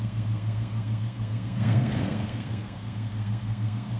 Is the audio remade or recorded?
remade